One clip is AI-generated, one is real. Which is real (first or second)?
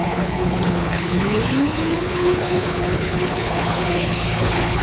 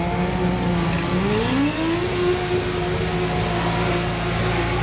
second